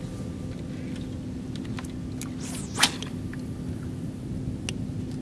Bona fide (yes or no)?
yes